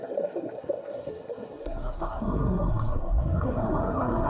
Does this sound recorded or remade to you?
remade